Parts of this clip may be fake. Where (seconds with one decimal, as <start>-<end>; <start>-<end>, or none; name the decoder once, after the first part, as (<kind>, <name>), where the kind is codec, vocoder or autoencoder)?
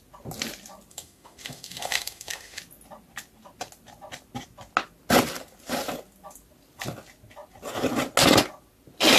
0.9-2.6 (autoencoder, DAC-VAE)